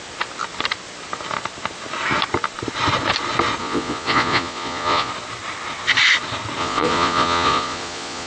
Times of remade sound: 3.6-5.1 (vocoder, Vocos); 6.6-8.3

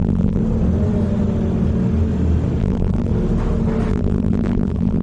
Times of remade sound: 0.0-0.4 (vocoder, BigVGAN v2); 2.6-3.1; 3.9-5.0